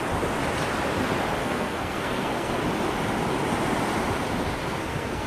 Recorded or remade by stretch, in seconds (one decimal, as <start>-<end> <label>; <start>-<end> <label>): 0.0-1.4 recorded; 1.4-2.6 remade; 2.6-4.6 recorded; 4.6-5.3 remade